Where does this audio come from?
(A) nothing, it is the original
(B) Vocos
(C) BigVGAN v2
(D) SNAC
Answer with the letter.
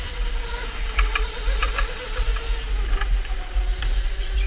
A